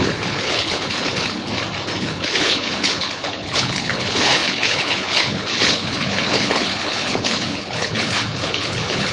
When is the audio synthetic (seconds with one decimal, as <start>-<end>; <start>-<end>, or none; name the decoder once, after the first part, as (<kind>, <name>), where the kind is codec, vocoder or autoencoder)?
0.0-1.5 (codec, HILCodec); 2.0-9.1